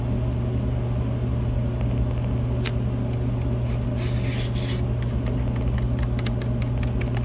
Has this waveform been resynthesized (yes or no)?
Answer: no